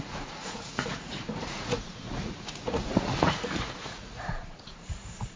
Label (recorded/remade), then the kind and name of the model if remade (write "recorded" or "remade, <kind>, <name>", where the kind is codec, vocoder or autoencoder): remade, vocoder, Vocos